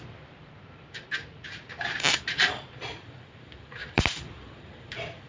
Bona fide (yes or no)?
no